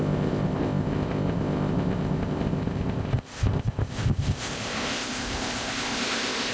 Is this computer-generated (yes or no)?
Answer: yes